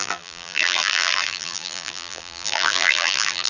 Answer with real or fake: fake